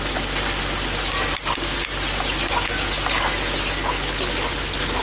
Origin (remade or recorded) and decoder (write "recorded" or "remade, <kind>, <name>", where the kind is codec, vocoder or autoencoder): recorded